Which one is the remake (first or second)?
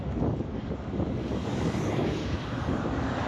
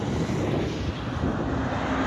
first